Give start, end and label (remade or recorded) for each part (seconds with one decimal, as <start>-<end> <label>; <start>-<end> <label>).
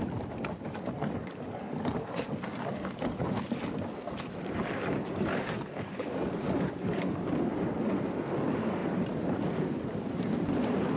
0.0-1.0 recorded; 1.0-3.2 remade; 3.2-5.3 recorded; 5.3-7.3 remade; 7.3-11.0 recorded